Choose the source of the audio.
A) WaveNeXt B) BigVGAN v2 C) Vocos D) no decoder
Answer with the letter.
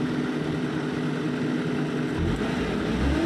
D